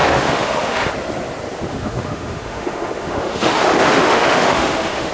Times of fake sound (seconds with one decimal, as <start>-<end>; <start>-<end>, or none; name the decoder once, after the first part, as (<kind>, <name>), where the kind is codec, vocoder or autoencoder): 0.0-0.9 (autoencoder, DAC-VAE); 1.7-5.1